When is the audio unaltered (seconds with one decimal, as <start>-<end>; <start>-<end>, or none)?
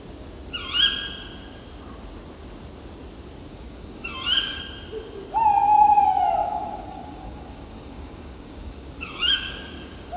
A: 0.0-3.5; 4.6-6.4